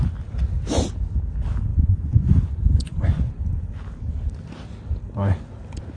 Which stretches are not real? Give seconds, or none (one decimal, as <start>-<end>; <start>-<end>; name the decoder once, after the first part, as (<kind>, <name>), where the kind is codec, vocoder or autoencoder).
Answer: 1.7-3.3 (vocoder, Vocos)